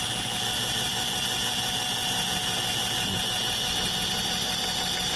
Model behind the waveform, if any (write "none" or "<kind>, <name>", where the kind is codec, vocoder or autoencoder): none